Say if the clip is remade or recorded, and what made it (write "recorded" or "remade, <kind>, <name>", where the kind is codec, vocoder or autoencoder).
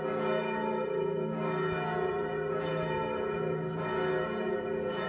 remade, vocoder, Vocos